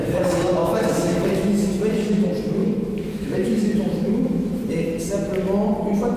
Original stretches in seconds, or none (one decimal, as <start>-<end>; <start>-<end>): 0.0-0.6; 1.5-2.6; 4.5-6.2